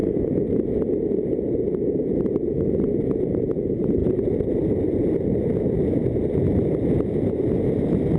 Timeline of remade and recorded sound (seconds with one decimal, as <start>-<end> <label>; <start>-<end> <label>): 0.0-1.1 recorded; 1.1-8.2 remade